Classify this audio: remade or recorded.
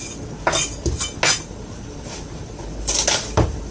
recorded